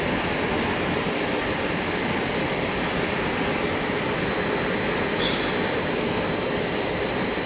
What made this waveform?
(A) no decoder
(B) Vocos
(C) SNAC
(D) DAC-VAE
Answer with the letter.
A